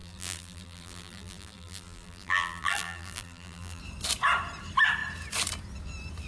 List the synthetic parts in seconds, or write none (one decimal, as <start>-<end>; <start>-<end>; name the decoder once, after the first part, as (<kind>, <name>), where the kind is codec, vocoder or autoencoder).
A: 0.0-3.8 (vocoder, BigVGAN v2)